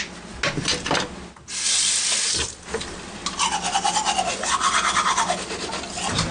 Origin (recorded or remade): recorded